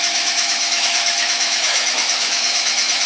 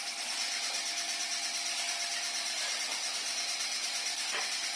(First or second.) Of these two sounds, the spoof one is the first